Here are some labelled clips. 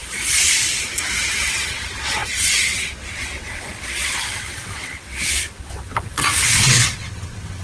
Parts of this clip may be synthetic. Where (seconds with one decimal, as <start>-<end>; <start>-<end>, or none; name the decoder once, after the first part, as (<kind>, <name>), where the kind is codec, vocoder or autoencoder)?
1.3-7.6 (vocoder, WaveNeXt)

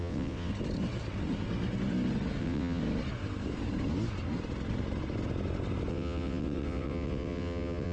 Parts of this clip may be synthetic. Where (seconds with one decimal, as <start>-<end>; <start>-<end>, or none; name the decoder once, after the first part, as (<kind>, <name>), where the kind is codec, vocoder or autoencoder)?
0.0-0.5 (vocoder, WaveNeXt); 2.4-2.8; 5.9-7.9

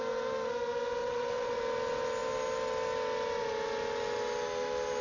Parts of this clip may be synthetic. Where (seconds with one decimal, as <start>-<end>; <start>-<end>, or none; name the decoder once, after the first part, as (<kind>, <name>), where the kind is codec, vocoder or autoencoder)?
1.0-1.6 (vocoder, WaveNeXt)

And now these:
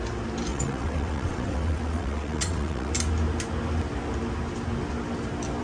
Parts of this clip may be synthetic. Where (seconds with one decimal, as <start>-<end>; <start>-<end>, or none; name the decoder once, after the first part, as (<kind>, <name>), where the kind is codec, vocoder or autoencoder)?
0.5-2.9 (vocoder, WaveNeXt)